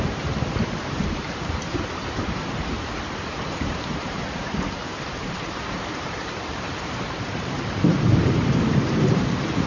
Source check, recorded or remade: remade